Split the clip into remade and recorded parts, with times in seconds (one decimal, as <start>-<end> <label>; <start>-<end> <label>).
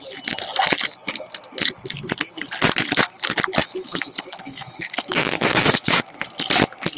0.0-3.6 recorded; 3.6-6.0 remade; 6.0-7.0 recorded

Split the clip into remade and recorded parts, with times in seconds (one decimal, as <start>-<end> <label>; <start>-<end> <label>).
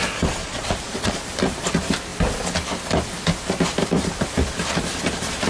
0.0-0.4 recorded; 0.4-1.2 remade; 1.2-5.5 recorded